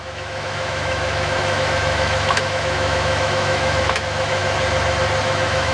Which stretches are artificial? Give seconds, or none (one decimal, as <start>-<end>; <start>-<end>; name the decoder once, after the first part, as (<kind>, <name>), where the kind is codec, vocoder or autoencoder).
0.0-4.4 (autoencoder, DAC-VAE); 5.2-5.7